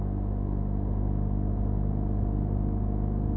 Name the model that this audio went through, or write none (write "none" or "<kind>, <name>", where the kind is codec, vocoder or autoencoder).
none